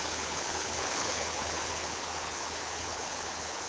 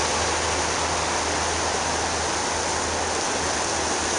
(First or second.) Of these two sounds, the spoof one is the first